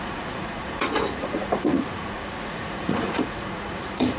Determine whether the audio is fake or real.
fake